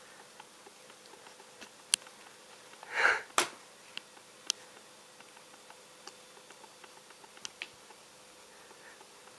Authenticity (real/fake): real